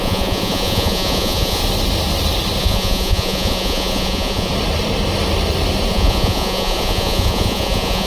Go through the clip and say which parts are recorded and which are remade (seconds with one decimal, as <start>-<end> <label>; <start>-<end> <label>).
0.0-1.6 remade; 1.6-2.6 recorded; 2.6-4.5 remade; 4.5-5.9 recorded; 5.9-8.1 remade